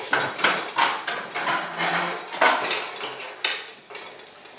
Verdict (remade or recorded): recorded